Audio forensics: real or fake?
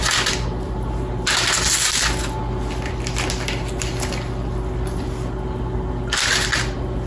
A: real